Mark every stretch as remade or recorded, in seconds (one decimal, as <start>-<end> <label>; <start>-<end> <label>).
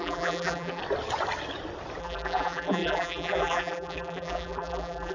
0.0-0.8 remade; 0.8-2.0 recorded; 2.0-5.1 remade